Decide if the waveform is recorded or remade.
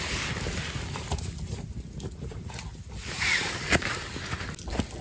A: recorded